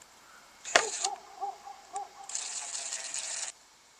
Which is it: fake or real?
fake